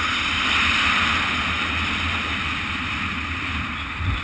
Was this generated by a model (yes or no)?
no